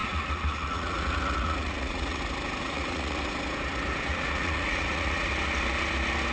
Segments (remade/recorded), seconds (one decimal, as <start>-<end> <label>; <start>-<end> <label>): 0.0-2.2 remade; 2.2-2.6 recorded; 2.6-3.2 remade; 3.2-4.1 recorded; 4.1-5.3 remade; 5.3-6.3 recorded